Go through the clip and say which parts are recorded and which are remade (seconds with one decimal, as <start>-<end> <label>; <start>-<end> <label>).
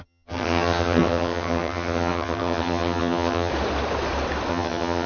0.0-3.5 remade; 3.5-4.5 recorded; 4.5-5.1 remade